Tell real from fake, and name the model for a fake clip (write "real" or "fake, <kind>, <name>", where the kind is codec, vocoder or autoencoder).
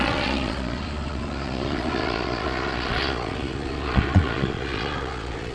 fake, vocoder, Vocos